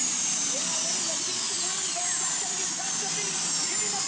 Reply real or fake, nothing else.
real